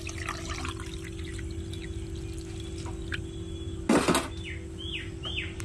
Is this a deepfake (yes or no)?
no